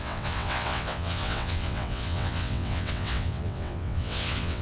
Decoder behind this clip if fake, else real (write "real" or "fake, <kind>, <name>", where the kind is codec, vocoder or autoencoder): fake, vocoder, WaveNeXt